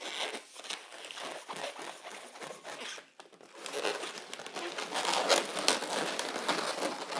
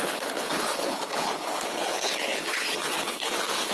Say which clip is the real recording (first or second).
first